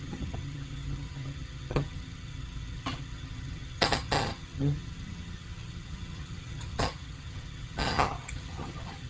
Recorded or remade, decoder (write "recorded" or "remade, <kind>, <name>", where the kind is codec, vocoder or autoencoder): remade, vocoder, HiFi-GAN